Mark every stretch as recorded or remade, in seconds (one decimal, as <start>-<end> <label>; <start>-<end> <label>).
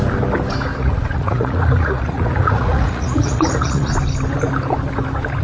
0.0-0.7 recorded; 0.7-3.9 remade; 3.9-5.4 recorded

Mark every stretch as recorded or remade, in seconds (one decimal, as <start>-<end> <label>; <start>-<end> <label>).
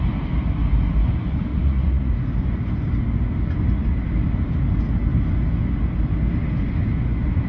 0.0-1.5 recorded; 1.5-2.1 remade; 2.1-7.5 recorded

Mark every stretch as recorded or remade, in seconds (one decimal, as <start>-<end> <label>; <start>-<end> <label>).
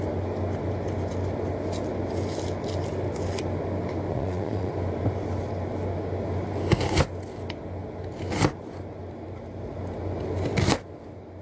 0.0-4.1 recorded; 4.1-4.7 remade; 4.7-11.4 recorded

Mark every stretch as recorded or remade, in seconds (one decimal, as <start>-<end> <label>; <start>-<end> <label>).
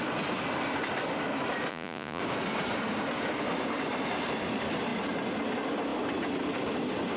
0.0-1.7 recorded; 1.7-2.2 remade; 2.2-7.2 recorded